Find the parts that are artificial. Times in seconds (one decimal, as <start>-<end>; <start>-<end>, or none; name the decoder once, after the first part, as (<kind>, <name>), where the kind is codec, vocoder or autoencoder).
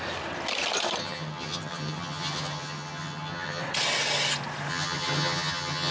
1.0-3.6 (vocoder, HiFi-GAN); 4.7-5.9